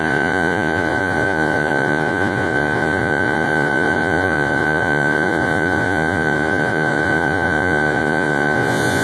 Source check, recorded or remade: remade